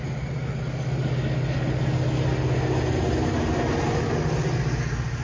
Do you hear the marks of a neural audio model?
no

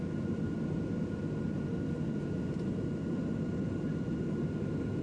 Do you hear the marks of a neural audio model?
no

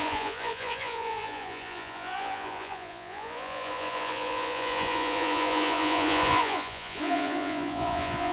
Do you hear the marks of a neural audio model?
yes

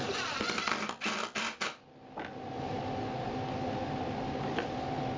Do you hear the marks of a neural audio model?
no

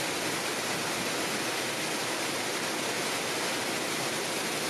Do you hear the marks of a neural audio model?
no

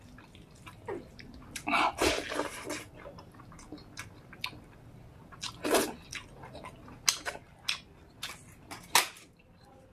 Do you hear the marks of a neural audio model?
no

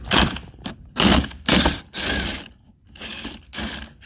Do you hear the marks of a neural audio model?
no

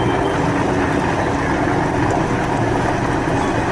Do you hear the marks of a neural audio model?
no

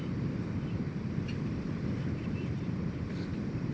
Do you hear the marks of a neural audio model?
no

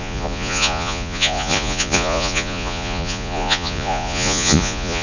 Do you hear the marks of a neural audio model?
yes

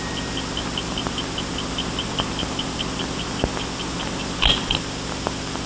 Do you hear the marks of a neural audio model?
no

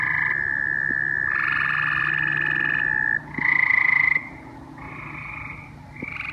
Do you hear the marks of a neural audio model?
no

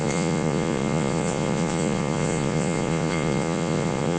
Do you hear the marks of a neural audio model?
yes